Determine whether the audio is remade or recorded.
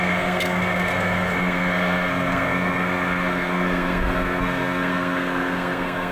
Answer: remade